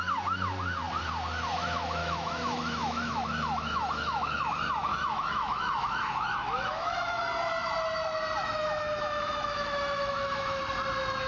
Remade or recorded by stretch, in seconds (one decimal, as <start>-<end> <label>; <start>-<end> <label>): 0.0-2.0 recorded; 2.0-4.5 remade; 4.5-4.9 recorded; 4.9-7.2 remade; 7.2-8.4 recorded; 8.4-10.6 remade; 10.6-11.3 recorded